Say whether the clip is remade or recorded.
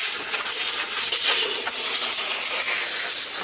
recorded